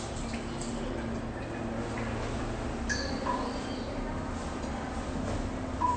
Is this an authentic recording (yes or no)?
yes